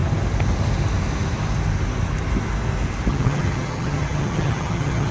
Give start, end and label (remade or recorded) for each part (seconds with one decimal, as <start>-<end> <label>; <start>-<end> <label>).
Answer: 0.0-3.1 recorded; 3.1-5.1 remade